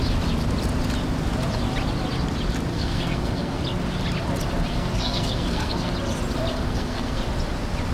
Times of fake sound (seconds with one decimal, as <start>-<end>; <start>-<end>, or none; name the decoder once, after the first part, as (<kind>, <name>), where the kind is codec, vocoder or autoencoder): 2.7-3.6 (codec, SNAC); 4.7-5.9; 6.5-7.2